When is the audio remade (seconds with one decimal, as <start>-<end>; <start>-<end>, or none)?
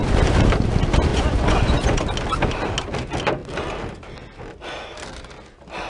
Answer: 1.1-2.0